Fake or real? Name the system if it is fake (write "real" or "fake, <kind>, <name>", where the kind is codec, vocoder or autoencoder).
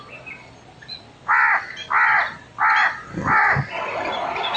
real